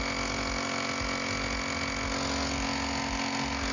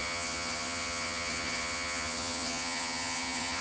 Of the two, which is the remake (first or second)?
second